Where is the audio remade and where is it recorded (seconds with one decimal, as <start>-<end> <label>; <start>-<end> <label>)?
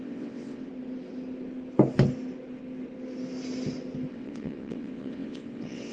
0.0-0.7 remade; 0.7-4.1 recorded; 4.1-5.9 remade